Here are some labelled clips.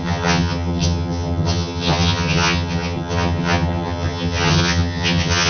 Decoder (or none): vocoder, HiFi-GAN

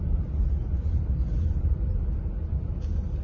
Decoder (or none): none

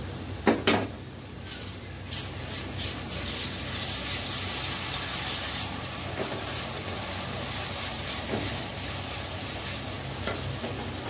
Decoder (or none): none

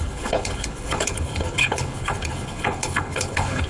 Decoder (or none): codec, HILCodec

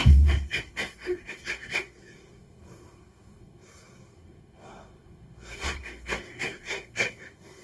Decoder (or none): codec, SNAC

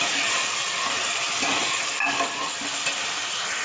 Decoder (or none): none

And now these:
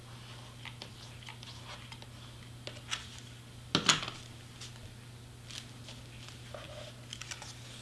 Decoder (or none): none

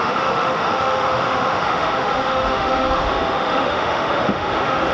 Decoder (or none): autoencoder, DAC-VAE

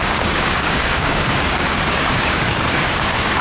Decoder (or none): codec, DAC